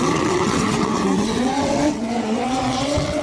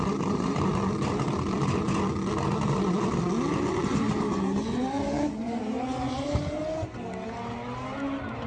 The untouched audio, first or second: second